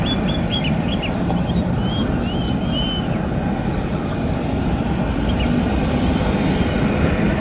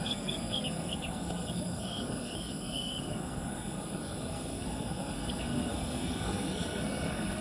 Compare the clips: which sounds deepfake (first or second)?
second